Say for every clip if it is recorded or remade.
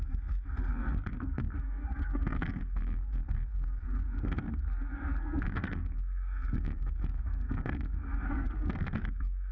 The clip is remade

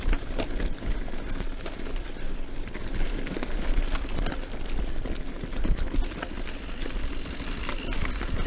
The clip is recorded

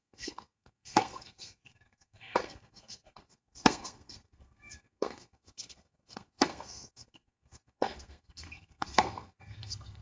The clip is remade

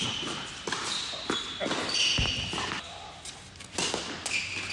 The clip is recorded